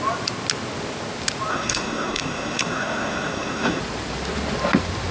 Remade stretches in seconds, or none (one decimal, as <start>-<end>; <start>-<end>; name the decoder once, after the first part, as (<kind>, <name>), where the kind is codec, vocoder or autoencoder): 1.5-3.8 (codec, SNAC)